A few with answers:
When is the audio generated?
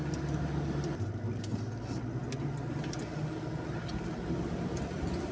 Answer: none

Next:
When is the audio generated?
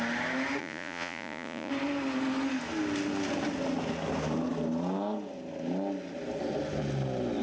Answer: 0.6-1.7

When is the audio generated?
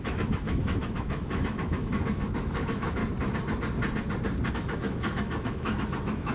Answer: 0.0-3.0; 4.5-6.3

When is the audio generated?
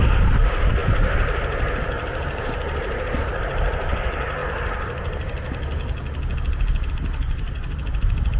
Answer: 0.0-4.4; 6.9-8.4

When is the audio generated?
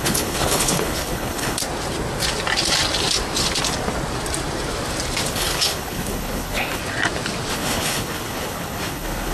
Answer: 0.0-1.6; 5.3-6.8; 7.5-9.3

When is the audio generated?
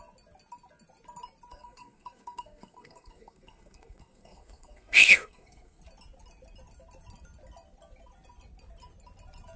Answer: 1.5-5.8